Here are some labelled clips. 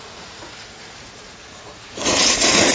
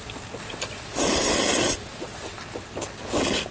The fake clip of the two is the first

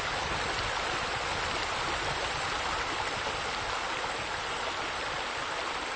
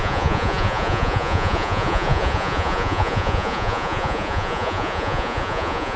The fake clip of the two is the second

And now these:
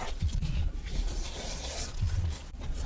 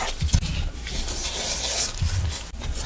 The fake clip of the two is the first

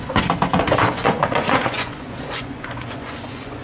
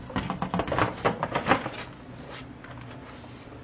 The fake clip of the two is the first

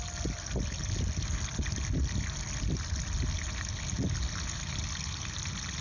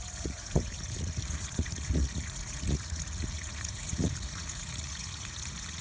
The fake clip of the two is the second